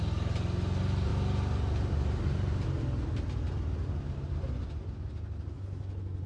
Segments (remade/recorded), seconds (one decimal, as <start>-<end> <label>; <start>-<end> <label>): 0.0-6.3 recorded